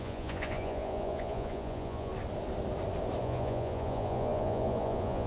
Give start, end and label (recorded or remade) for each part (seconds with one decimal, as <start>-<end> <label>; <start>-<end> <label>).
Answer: 0.0-2.1 remade; 2.1-3.2 recorded; 3.2-5.3 remade